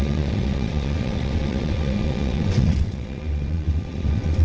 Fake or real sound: fake